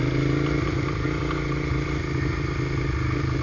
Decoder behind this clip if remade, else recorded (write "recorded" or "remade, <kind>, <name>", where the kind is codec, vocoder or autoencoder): recorded